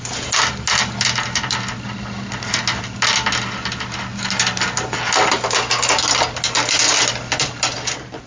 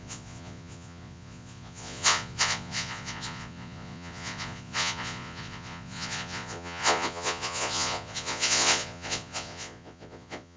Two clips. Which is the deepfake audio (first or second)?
second